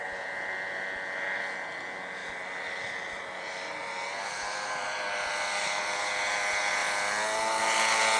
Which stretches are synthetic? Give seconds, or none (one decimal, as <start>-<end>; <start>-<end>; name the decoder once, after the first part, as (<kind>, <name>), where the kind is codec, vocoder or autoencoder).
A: 2.2-5.8 (vocoder, BigVGAN v2)